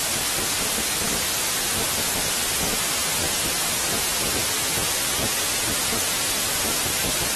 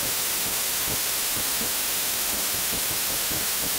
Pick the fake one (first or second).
second